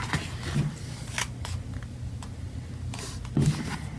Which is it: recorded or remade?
recorded